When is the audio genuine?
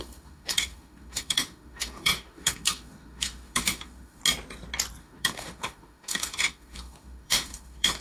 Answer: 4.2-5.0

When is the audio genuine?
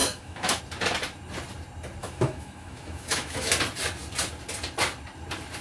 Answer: 0.6-2.0; 3.5-5.6